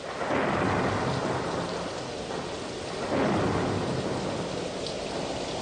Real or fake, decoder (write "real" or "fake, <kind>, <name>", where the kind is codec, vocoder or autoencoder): real